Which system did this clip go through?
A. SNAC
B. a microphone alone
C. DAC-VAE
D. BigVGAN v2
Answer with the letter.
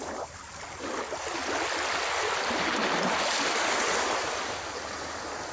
B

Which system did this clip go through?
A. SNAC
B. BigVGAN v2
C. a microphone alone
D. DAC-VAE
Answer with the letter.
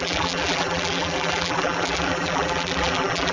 B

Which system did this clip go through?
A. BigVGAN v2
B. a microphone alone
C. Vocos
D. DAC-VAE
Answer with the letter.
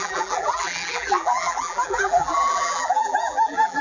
A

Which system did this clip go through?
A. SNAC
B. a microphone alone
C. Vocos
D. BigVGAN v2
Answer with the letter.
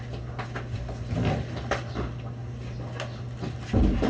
B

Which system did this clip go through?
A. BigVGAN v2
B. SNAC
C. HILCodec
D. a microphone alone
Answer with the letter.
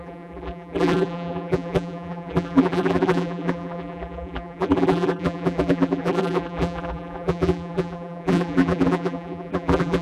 A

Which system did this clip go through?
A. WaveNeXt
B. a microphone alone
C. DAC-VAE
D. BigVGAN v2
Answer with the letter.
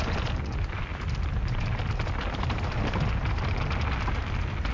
B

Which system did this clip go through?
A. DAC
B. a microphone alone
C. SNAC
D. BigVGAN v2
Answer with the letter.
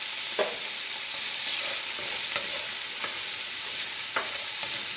B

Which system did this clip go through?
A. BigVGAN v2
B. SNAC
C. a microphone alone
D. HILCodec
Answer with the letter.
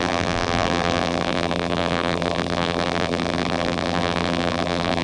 A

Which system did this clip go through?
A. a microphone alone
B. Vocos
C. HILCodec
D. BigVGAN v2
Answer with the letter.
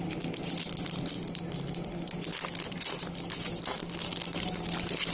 A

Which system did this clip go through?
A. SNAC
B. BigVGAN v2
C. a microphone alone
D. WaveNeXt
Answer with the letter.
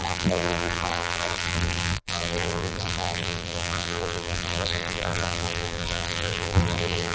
B